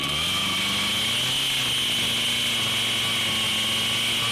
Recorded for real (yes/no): yes